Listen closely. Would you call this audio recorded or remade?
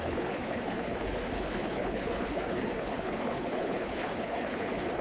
remade